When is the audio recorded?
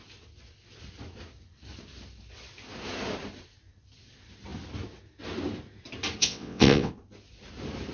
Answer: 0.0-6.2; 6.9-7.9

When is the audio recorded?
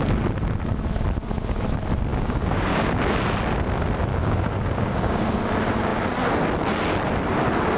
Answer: 0.0-2.1; 3.1-4.1; 5.4-7.8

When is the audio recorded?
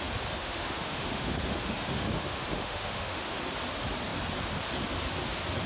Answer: 0.0-0.4; 3.4-5.7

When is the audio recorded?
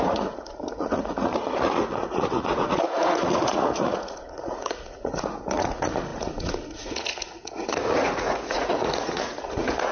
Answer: none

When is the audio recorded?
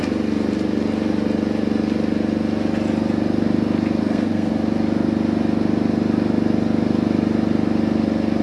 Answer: 0.0-4.0; 4.5-8.4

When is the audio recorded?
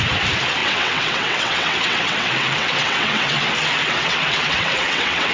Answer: 0.0-0.6; 3.4-3.8